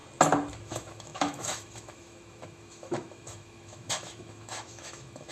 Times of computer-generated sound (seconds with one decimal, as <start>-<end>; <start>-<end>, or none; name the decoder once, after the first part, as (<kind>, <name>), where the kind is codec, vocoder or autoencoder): 0.5-5.3 (autoencoder, DAC-VAE)